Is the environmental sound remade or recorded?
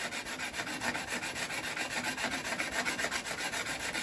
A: recorded